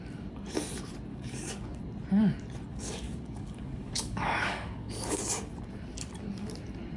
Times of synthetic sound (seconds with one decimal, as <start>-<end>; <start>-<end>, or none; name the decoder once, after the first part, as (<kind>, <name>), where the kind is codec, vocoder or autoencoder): 1.1-1.8 (codec, DAC); 2.7-5.2